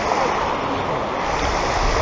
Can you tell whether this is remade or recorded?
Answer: recorded